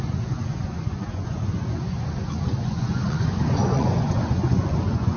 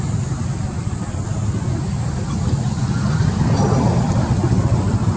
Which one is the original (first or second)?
second